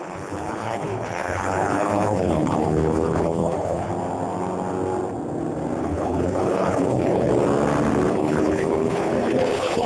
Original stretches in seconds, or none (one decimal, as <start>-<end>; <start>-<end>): 3.9-5.8; 7.3-8.1